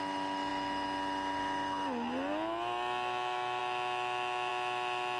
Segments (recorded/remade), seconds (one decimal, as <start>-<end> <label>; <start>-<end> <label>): 0.0-5.2 recorded